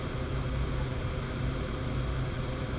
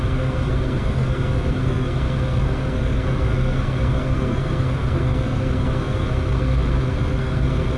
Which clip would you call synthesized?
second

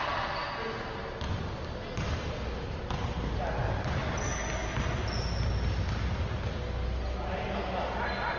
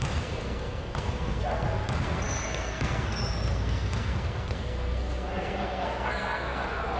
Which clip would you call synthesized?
second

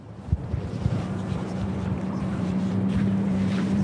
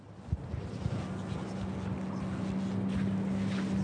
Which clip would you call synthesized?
first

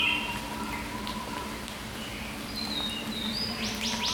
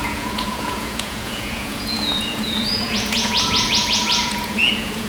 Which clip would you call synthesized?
second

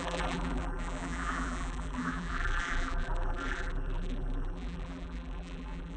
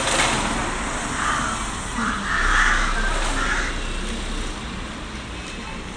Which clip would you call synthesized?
first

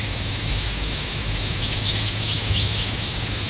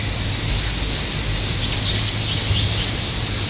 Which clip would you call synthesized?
first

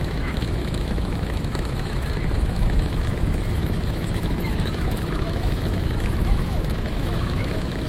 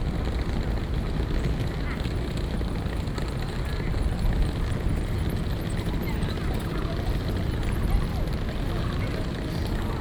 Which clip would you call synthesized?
first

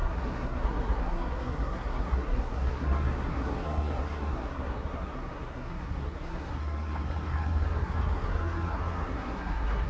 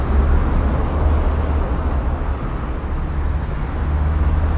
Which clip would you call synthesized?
first